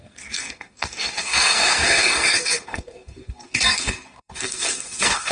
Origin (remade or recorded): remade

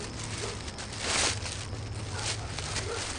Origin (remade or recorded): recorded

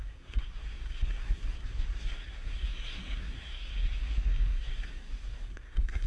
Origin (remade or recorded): remade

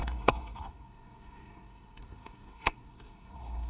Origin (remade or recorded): remade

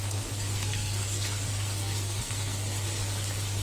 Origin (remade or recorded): remade